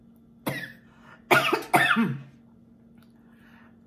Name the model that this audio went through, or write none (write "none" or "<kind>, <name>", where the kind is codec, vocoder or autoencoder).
none